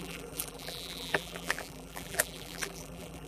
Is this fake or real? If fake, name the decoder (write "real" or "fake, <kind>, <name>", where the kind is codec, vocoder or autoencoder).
fake, vocoder, BigVGAN v2